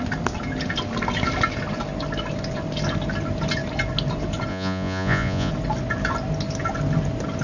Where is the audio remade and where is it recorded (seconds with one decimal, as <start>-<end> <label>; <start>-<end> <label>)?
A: 0.0-4.5 recorded; 4.5-5.5 remade; 5.5-7.4 recorded